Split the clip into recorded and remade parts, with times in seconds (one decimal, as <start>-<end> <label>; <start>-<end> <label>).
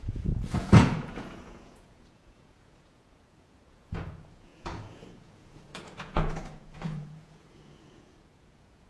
0.0-8.9 remade